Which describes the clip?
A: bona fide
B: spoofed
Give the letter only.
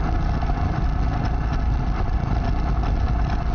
A